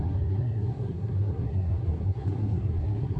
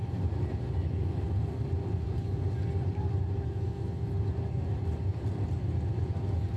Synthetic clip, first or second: first